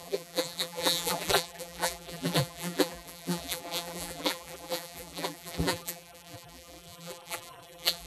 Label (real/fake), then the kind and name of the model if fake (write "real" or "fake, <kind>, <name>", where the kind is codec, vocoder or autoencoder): fake, vocoder, BigVGAN v2